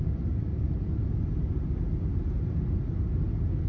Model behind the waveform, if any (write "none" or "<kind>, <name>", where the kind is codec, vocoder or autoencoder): none